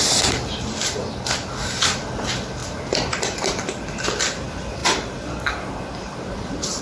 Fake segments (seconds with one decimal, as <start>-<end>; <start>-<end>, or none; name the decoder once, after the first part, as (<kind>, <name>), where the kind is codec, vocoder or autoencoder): 4.8-6.8 (vocoder, BigVGAN v2)